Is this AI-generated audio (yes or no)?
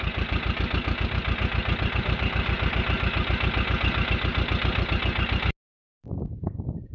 no